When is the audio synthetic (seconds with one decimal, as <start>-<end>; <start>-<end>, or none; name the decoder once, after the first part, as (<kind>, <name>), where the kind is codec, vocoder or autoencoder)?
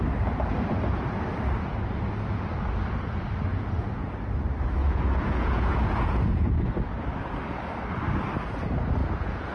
3.5-4.1 (vocoder, Vocos); 4.8-6.7; 9.0-9.5